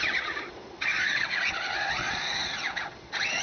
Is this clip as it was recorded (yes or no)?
no